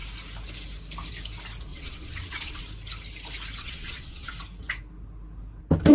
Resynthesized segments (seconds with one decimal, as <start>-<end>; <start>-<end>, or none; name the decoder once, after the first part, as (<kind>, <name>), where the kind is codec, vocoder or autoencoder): 1.7-2.6 (vocoder, WaveNeXt); 3.6-4.3

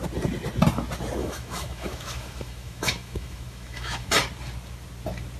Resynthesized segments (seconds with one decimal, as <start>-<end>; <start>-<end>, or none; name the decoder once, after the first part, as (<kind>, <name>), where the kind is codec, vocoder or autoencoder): 1.2-4.1 (autoencoder, DAC-VAE)

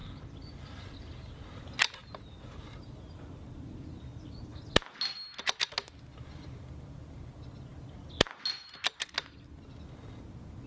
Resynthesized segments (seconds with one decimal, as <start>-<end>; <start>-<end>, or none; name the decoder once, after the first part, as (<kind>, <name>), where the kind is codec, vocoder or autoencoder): none

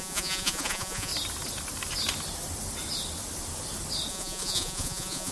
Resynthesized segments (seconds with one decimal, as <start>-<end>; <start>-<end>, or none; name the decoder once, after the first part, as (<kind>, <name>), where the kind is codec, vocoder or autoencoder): 0.0-1.1 (vocoder, Vocos); 4.1-5.3

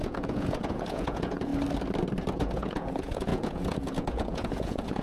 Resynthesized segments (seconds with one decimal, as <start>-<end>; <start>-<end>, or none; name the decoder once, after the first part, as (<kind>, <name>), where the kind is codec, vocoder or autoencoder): 0.0-1.5 (vocoder, Vocos); 2.3-5.0

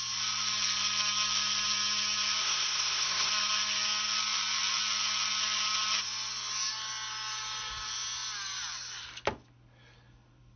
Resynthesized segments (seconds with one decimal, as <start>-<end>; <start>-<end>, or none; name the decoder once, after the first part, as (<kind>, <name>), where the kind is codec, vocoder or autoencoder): 2.4-3.3 (codec, SNAC)